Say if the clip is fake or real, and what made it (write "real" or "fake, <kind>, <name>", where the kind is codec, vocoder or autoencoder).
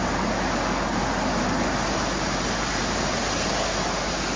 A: real